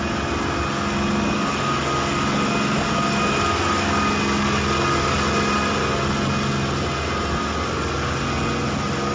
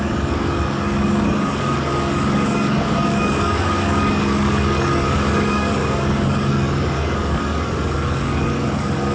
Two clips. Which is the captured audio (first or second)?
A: first